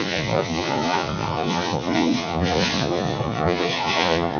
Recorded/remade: remade